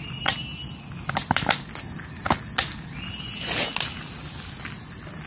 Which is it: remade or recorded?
recorded